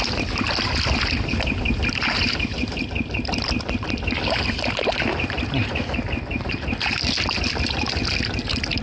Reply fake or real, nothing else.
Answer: real